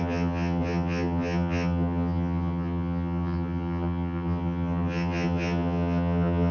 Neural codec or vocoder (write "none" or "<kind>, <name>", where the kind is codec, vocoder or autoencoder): vocoder, HiFi-GAN